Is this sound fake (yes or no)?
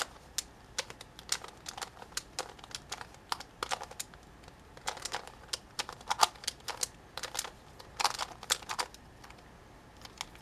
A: no